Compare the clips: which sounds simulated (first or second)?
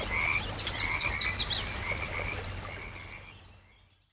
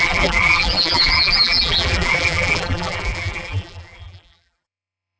second